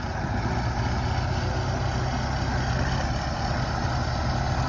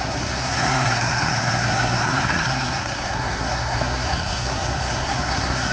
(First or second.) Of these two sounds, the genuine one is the first